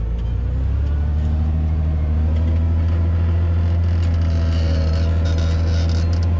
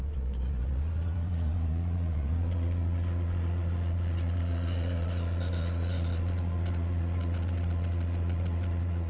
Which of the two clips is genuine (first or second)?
first